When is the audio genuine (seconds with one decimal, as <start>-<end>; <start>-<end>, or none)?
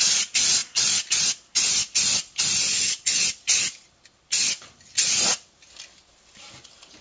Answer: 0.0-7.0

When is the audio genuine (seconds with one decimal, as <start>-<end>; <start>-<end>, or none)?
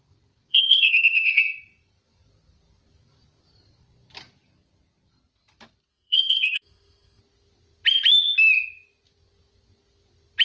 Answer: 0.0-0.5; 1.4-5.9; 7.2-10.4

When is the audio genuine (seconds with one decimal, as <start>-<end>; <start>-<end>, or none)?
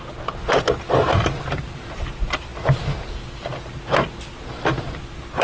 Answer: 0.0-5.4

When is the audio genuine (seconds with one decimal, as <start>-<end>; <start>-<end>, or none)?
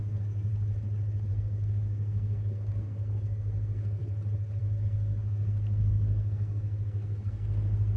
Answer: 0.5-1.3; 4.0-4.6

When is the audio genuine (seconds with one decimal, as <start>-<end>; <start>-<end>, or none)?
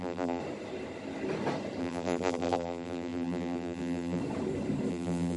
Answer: 0.4-1.8; 4.2-4.9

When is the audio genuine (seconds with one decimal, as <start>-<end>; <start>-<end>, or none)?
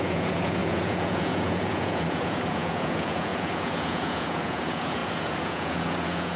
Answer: none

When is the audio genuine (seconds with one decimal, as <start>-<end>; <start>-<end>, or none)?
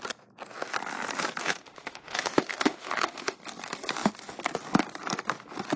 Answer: 0.0-1.4; 3.4-5.8